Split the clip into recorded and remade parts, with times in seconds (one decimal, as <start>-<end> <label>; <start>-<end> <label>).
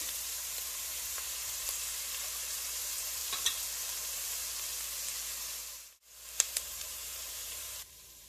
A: 0.0-3.2 remade; 3.2-6.6 recorded; 6.6-8.3 remade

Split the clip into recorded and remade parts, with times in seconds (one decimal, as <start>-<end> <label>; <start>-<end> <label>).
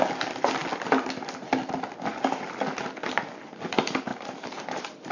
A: 0.0-4.1 recorded; 4.1-5.1 remade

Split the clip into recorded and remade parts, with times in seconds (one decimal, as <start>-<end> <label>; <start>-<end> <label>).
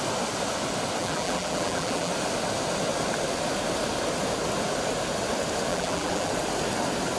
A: 0.0-1.0 recorded; 1.0-2.1 remade; 2.1-5.7 recorded; 5.7-6.3 remade; 6.3-7.2 recorded